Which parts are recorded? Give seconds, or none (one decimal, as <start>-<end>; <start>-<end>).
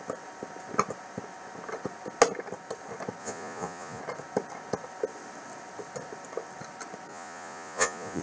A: 0.0-3.2; 4.0-7.1